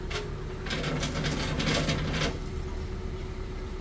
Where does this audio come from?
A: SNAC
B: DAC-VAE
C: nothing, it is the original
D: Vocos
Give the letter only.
C